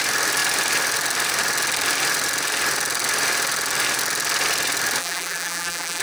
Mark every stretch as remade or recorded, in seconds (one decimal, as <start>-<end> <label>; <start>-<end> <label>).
0.0-5.0 recorded; 5.0-6.0 remade